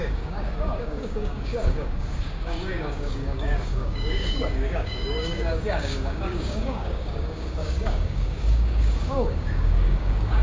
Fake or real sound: fake